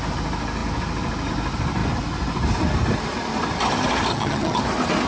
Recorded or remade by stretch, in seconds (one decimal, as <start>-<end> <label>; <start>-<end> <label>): 0.0-4.1 recorded; 4.1-4.6 remade; 4.6-5.1 recorded